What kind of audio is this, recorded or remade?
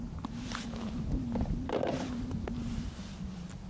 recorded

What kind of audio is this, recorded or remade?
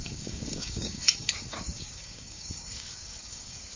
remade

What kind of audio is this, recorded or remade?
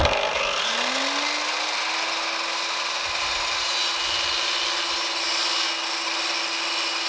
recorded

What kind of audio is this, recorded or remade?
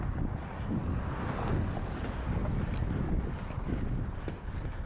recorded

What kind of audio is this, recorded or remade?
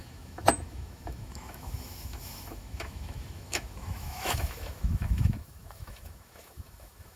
remade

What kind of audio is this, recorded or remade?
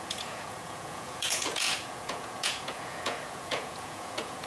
remade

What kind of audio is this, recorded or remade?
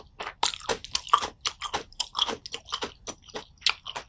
recorded